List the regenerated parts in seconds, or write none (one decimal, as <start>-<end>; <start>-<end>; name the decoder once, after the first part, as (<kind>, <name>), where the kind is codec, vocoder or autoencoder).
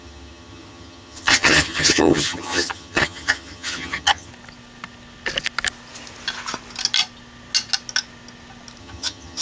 0.0-4.3 (vocoder, HiFi-GAN); 8.8-9.4